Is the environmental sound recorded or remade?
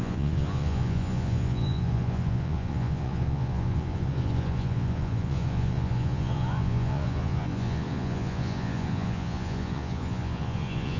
remade